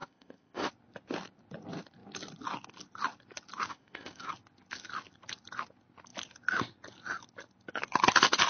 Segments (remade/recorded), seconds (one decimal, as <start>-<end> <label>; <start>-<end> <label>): 0.0-0.7 remade; 0.7-3.7 recorded; 3.7-4.3 remade; 4.3-8.5 recorded